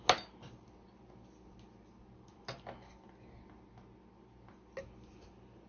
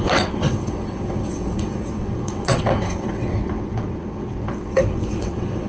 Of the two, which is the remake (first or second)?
second